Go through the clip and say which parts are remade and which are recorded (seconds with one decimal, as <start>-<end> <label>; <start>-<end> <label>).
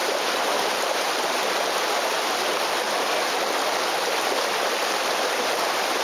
0.0-1.9 remade; 1.9-6.0 recorded